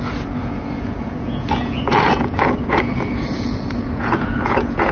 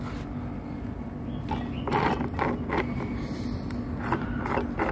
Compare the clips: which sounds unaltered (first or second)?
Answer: second